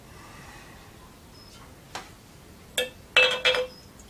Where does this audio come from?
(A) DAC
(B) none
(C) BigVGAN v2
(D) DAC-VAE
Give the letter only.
B